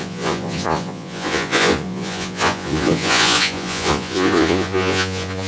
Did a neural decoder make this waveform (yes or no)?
yes